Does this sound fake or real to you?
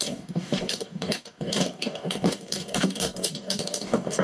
fake